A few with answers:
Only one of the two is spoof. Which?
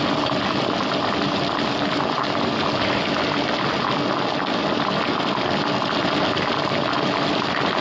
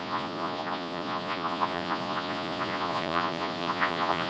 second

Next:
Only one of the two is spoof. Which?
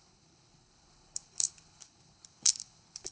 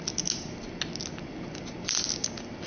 first